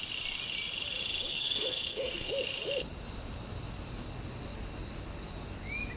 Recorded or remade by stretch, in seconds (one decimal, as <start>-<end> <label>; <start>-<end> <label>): 0.0-1.3 recorded; 1.3-2.3 remade; 2.3-6.0 recorded